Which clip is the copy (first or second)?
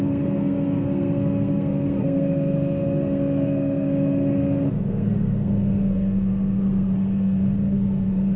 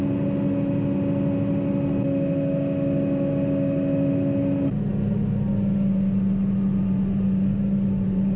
first